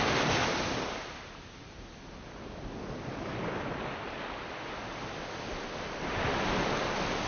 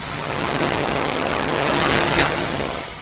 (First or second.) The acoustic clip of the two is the first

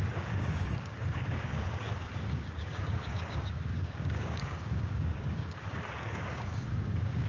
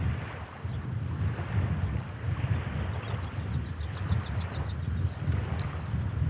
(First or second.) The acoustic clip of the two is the second